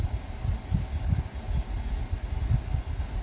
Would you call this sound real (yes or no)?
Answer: yes